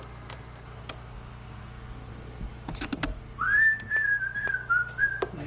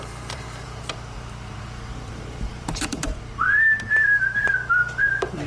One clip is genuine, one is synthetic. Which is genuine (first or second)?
first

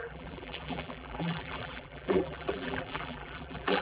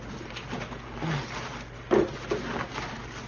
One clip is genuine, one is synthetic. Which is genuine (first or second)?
second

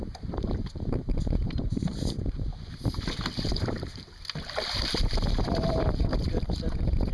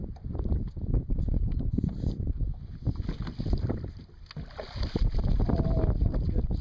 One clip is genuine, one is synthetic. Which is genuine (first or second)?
second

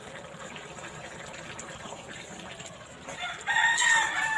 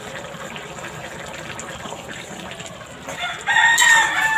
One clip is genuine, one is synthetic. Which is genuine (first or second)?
second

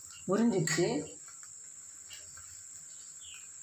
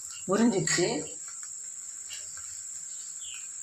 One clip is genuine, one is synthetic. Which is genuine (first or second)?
first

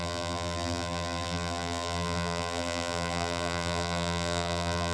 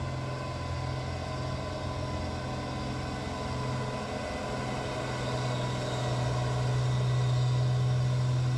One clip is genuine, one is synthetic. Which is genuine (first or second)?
second